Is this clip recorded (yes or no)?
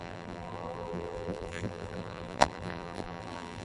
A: no